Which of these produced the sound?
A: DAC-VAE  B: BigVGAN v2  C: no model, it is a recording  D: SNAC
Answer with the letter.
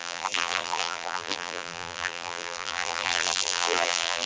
B